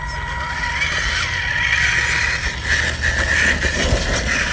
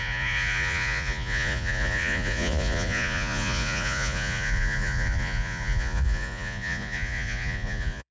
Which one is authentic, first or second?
first